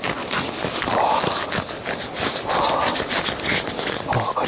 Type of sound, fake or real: real